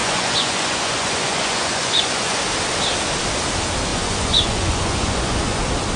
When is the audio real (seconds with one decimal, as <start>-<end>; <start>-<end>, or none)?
2.4-3.9; 5.6-6.0